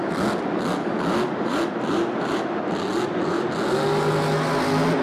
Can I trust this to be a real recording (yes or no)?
yes